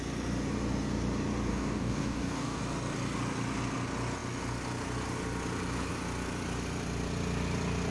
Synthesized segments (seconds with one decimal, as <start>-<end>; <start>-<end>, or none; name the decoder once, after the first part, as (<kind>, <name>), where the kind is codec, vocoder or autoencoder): 1.5-2.6 (codec, DAC)